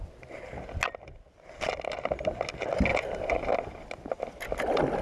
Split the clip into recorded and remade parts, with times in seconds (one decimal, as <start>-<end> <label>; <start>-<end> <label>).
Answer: 0.0-2.9 recorded; 2.9-3.5 remade; 3.5-5.0 recorded

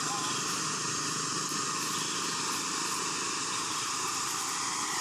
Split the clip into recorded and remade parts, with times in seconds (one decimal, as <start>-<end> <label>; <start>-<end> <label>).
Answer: 0.0-5.0 recorded

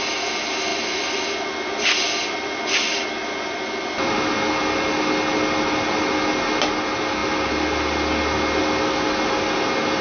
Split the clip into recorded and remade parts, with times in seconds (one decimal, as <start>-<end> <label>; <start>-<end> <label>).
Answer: 0.0-10.0 recorded